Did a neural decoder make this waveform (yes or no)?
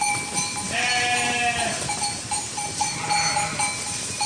no